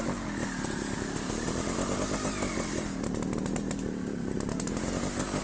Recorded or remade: recorded